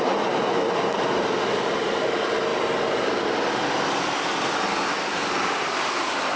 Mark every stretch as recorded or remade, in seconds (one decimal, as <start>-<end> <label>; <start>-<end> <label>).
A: 0.0-6.4 recorded

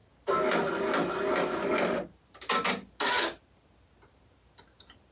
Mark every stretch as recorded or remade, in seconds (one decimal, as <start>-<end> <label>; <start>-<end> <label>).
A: 0.0-5.1 recorded

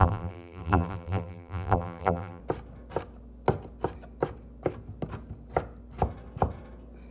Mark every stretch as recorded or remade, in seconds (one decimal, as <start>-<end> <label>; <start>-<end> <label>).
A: 0.0-2.4 remade; 2.4-7.1 recorded

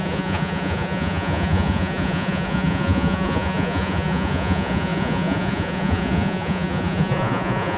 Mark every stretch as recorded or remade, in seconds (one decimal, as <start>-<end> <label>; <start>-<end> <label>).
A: 0.0-7.8 remade

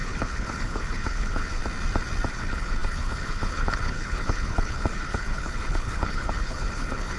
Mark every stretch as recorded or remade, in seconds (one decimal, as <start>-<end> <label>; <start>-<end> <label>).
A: 0.0-1.6 remade; 1.6-2.3 recorded; 2.3-7.2 remade

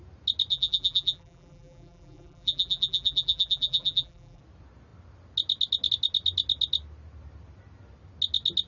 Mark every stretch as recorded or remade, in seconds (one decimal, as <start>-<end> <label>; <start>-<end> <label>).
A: 0.0-0.5 recorded; 0.5-4.4 remade; 4.4-8.7 recorded